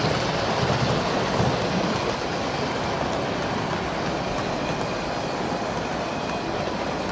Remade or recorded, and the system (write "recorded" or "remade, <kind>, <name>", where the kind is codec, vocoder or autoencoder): recorded